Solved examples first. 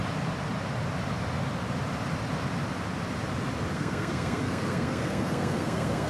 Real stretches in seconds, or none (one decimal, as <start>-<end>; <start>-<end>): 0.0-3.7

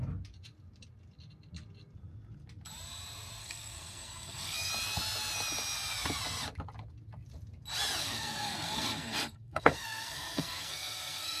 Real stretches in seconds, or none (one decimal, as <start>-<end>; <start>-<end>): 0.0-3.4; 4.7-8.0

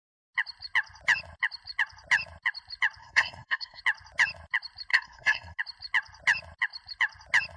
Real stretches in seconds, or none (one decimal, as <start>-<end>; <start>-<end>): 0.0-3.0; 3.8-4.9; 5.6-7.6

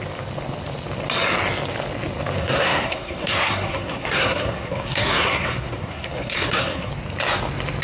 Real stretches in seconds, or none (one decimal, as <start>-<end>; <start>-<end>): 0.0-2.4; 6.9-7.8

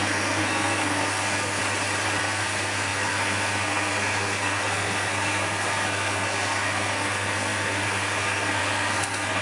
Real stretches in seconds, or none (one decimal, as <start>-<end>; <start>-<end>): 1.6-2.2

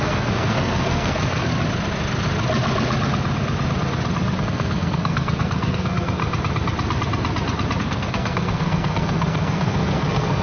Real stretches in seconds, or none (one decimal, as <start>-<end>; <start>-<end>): 1.5-4.4; 6.2-7.8

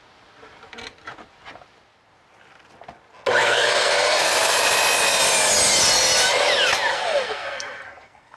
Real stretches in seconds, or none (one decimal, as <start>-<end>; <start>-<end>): 0.0-3.4; 4.3-6.9